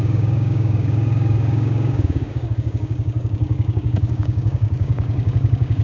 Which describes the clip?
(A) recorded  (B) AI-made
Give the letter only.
B